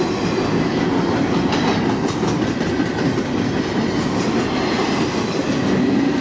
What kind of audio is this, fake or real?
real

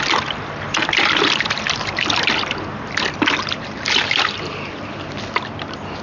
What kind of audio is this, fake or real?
real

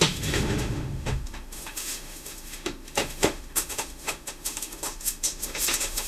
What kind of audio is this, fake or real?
fake